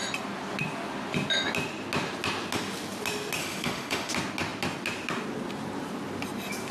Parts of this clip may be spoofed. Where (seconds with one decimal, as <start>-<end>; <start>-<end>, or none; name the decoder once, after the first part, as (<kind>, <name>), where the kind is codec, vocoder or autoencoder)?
3.4-4.1 (autoencoder, DAC-VAE)

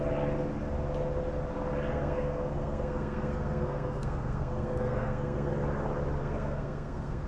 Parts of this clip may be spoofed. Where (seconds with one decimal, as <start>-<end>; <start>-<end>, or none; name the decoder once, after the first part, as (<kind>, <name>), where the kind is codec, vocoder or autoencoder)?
1.9-5.5 (codec, SNAC); 6.2-7.3

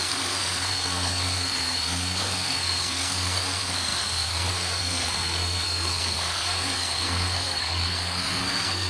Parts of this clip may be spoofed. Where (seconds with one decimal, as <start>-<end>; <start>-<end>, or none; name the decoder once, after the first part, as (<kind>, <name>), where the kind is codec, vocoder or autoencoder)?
0.0-8.9 (codec, SNAC)

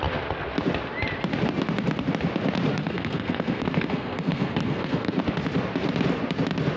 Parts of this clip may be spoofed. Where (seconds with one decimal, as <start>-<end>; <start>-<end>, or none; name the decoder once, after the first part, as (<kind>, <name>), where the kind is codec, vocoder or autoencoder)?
2.7-5.2 (codec, SNAC)

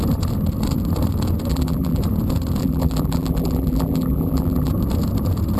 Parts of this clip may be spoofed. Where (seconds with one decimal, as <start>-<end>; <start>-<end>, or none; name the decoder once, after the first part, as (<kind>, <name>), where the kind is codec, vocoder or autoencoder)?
1.5-2.0 (vocoder, BigVGAN v2); 2.6-4.7

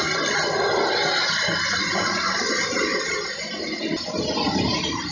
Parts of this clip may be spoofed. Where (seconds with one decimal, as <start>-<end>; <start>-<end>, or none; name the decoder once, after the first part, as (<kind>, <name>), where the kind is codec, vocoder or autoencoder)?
none

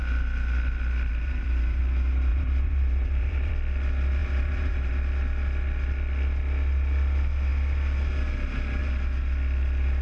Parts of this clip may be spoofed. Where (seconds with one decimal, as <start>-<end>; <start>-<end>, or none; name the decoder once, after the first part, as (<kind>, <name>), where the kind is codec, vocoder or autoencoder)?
1.1-1.8 (vocoder, BigVGAN v2); 2.3-3.5; 4.2-4.9